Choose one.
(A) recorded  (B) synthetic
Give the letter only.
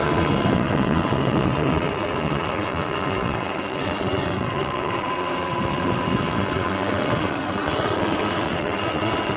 B